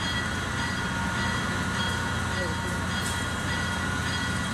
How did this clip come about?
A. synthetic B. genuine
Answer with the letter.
B